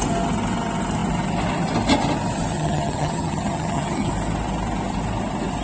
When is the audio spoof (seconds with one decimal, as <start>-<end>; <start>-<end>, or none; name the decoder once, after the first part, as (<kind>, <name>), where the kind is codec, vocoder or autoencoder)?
2.5-4.1 (vocoder, HiFi-GAN)